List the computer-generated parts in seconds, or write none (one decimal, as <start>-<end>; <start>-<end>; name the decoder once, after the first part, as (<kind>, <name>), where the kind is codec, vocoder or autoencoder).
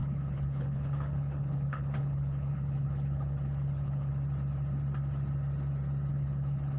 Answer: 0.0-4.1 (codec, HILCodec); 6.1-6.8